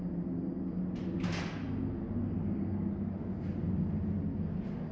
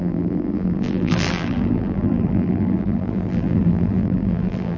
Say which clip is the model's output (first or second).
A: second